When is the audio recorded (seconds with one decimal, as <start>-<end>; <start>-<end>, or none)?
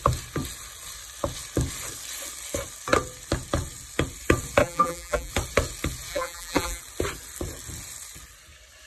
0.0-4.6; 5.3-6.1; 6.8-8.9